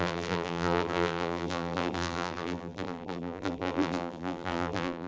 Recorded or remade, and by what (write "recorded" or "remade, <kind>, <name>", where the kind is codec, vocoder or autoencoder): remade, vocoder, BigVGAN v2